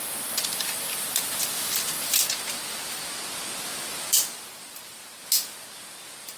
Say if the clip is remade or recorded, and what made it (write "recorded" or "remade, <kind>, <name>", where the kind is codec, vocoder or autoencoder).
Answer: recorded